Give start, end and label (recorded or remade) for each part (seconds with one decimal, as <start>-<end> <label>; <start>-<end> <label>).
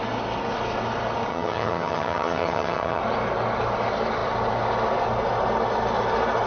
0.0-1.3 recorded; 1.3-3.0 remade; 3.0-6.5 recorded